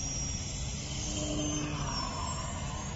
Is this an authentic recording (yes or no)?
yes